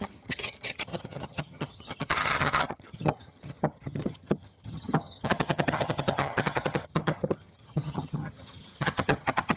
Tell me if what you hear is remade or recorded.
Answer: remade